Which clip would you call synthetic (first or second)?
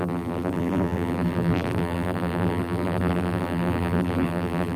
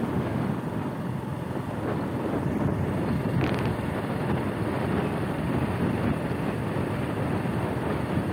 first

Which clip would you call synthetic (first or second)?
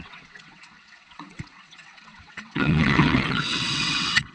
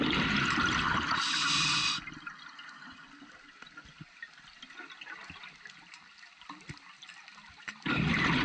first